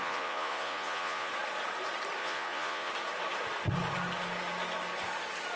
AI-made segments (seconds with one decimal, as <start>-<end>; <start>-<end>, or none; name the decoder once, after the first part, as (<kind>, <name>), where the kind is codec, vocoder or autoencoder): 0.0-1.3 (vocoder, Vocos); 2.2-2.9